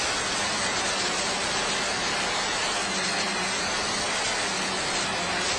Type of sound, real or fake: real